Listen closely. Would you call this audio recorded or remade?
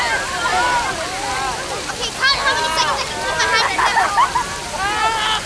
recorded